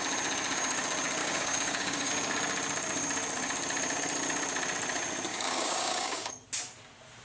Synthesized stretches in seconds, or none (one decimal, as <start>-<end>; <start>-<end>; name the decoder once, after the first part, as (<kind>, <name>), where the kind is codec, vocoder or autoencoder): 1.2-2.1 (codec, DAC); 5.3-6.3